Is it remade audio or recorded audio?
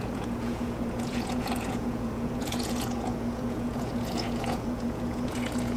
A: remade